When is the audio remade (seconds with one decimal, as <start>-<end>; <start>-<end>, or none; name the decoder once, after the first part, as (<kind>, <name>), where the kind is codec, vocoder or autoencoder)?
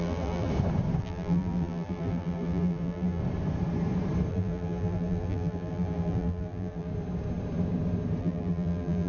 0.0-0.5 (vocoder, BigVGAN v2); 1.0-3.2; 4.3-6.9; 8.2-9.1